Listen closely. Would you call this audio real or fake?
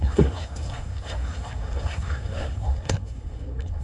fake